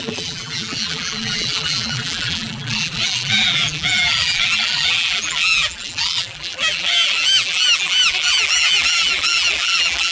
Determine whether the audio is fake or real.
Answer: fake